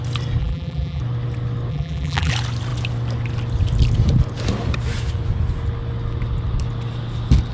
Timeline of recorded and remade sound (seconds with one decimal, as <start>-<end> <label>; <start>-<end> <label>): 0.0-0.4 recorded; 0.4-1.0 remade; 1.0-1.7 recorded; 1.7-2.3 remade; 2.3-7.5 recorded